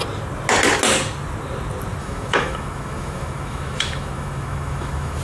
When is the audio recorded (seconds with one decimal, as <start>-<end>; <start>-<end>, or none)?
0.0-2.0